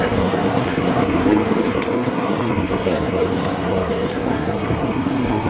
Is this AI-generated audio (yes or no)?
yes